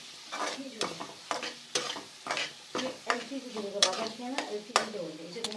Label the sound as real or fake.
real